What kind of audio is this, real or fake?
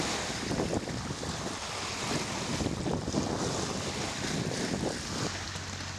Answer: real